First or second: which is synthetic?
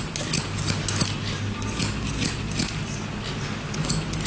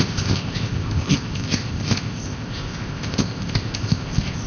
second